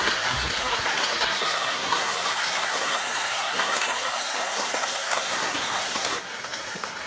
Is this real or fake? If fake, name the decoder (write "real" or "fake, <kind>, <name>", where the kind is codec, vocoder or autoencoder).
fake, codec, SNAC